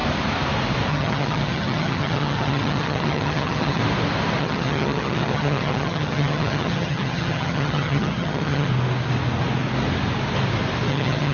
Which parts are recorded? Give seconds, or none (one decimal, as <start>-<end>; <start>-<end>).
0.0-0.9; 3.8-4.4; 8.7-10.9